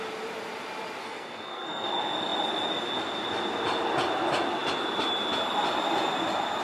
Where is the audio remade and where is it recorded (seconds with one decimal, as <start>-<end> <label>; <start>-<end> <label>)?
0.0-1.0 recorded; 1.0-1.9 remade; 1.9-6.6 recorded